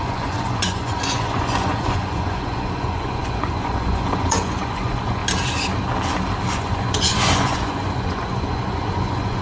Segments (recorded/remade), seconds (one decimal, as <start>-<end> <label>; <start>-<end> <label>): 0.0-5.2 remade; 5.2-6.5 recorded; 6.5-9.4 remade

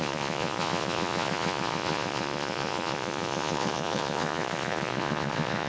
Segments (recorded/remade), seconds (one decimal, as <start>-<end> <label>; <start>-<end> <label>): 0.0-5.7 remade

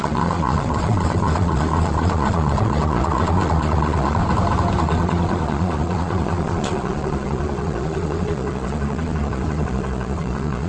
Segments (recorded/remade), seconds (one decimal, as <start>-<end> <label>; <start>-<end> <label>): 0.0-4.2 remade; 4.2-4.8 recorded; 4.8-10.7 remade

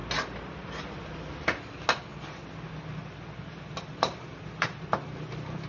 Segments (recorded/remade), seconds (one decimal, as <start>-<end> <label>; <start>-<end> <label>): 0.0-5.7 recorded